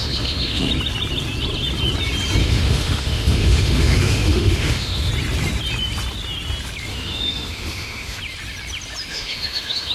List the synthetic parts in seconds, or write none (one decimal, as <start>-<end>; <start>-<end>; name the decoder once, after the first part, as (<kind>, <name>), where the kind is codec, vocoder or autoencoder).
0.0-0.7 (autoencoder, DAC-VAE); 2.4-5.1; 6.9-8.2; 9.1-9.9